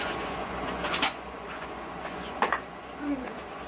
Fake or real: fake